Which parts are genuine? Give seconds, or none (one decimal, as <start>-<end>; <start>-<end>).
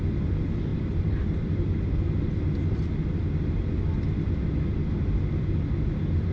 0.0-6.3